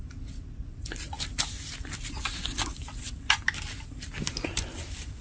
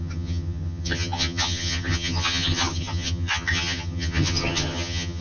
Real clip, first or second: first